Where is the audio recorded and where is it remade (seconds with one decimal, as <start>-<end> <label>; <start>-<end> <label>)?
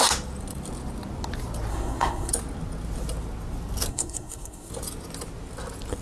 0.0-1.7 recorded; 1.7-2.3 remade; 2.3-3.9 recorded; 3.9-4.7 remade; 4.7-6.0 recorded